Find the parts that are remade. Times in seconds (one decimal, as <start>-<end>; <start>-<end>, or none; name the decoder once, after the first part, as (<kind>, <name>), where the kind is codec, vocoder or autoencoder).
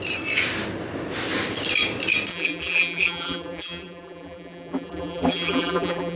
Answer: 2.3-6.2 (vocoder, BigVGAN v2)